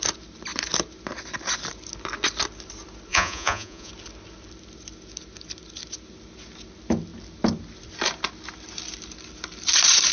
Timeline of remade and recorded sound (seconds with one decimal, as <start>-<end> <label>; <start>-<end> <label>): 0.0-3.1 recorded; 3.1-3.9 remade; 3.9-10.1 recorded